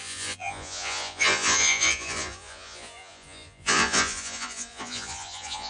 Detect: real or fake fake